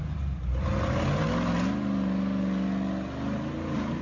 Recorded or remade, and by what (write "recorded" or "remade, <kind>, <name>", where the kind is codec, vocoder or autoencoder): recorded